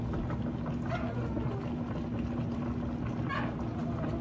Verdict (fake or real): real